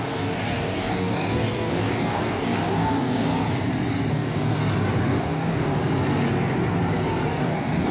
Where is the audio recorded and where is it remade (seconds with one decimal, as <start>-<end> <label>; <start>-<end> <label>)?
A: 0.0-3.3 remade; 3.3-4.1 recorded; 4.1-4.6 remade; 4.6-5.2 recorded; 5.2-5.8 remade; 5.8-7.4 recorded; 7.4-7.9 remade